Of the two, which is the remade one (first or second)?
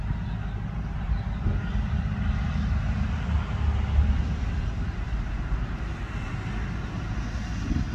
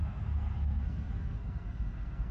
second